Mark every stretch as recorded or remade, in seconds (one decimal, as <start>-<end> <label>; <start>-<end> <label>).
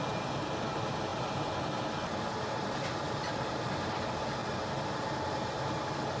0.0-6.2 recorded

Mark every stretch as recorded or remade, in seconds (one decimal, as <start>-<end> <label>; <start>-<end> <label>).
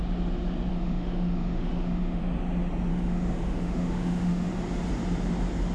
0.0-0.7 recorded; 0.7-2.2 remade; 2.2-2.9 recorded; 2.9-4.5 remade; 4.5-5.7 recorded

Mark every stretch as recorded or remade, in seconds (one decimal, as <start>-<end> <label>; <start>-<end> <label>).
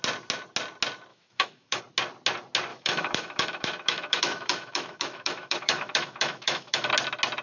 0.0-1.1 recorded; 1.1-1.8 remade; 1.8-2.7 recorded; 2.7-6.9 remade; 6.9-7.4 recorded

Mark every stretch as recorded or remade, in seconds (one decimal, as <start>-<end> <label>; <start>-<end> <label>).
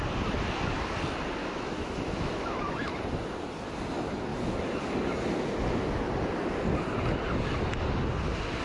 0.0-1.4 recorded; 1.4-2.9 remade; 2.9-8.6 recorded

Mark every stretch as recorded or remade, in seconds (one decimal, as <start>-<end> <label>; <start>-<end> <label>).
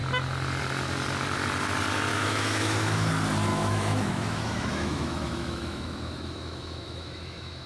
0.0-2.1 recorded; 2.1-3.1 remade; 3.1-3.5 recorded; 3.5-7.7 remade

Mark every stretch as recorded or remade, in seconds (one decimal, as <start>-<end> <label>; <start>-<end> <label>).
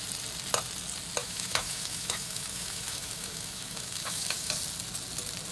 0.0-1.2 recorded; 1.2-4.5 remade; 4.5-5.5 recorded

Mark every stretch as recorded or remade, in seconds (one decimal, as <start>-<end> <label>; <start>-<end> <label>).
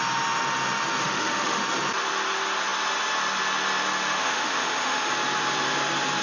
0.0-1.0 recorded; 1.0-1.6 remade; 1.6-4.2 recorded; 4.2-5.1 remade; 5.1-6.2 recorded